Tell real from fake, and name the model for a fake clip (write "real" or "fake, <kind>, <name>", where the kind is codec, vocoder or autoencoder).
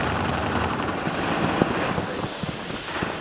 real